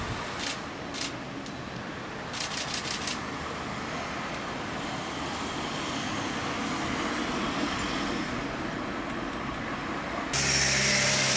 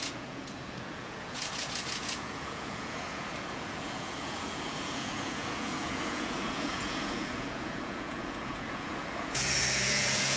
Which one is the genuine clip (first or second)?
first